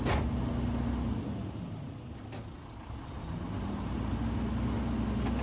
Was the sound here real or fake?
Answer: real